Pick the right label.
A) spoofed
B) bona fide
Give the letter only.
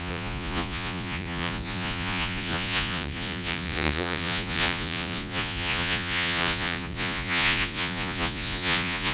A